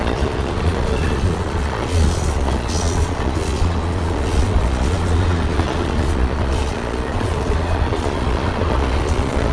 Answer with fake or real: fake